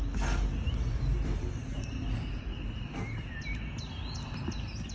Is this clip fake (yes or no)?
no